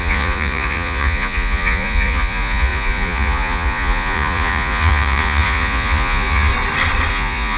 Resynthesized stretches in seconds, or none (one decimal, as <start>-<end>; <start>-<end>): 0.0-6.5; 7.1-7.6